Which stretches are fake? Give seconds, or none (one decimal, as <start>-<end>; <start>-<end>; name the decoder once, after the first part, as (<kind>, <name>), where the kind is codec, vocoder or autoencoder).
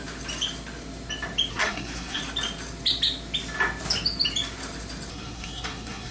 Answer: 1.5-2.2 (codec, SNAC); 5.1-6.1